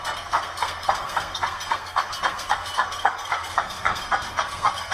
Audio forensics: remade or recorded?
remade